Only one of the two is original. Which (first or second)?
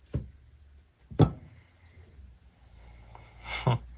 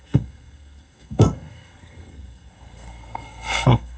first